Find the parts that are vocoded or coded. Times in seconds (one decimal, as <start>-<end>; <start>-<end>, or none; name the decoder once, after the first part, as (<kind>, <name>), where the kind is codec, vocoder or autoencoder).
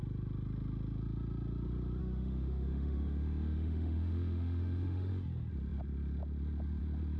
2.0-5.1 (autoencoder, DAC-VAE)